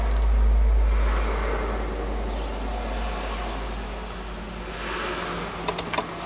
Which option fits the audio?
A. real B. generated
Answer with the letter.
A